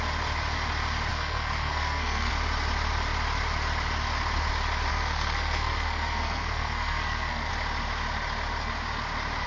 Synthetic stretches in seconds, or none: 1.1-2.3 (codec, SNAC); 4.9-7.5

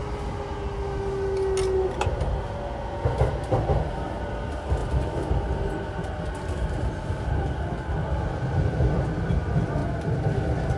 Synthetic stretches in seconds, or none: none

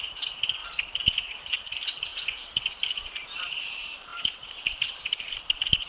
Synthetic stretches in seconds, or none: 0.0-0.6 (vocoder, BigVGAN v2); 1.3-2.1; 2.7-5.9

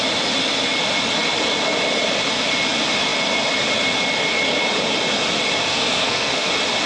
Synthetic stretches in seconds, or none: 5.7-6.5 (codec, SNAC)